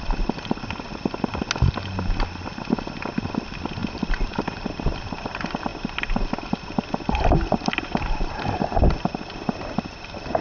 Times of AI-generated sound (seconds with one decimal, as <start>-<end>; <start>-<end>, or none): none